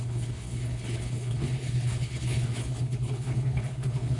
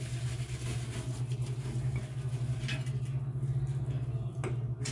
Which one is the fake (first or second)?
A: first